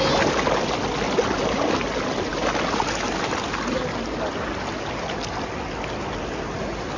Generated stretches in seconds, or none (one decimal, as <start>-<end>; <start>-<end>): none